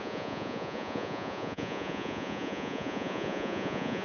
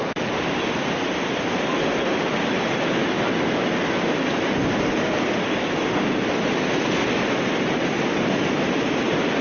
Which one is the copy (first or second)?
first